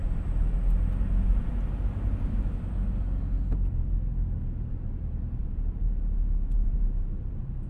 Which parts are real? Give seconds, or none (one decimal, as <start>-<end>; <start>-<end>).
0.0-3.7